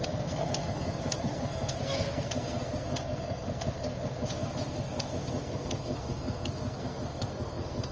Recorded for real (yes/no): no